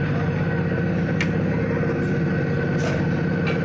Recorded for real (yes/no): yes